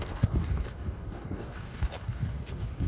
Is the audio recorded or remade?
remade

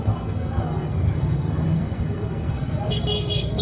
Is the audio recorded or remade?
remade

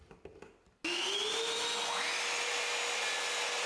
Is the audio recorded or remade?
recorded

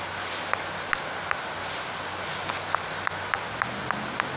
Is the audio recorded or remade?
recorded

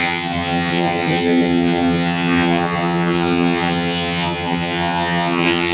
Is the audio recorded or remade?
remade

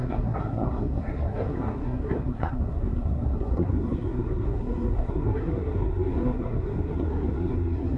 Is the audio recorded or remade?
remade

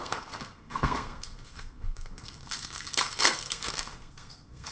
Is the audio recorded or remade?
remade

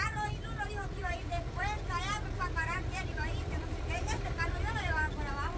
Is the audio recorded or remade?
remade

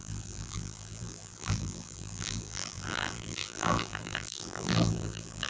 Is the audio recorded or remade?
remade